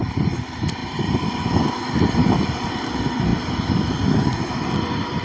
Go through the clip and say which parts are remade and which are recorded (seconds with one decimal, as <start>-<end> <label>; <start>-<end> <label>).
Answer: 0.0-5.2 remade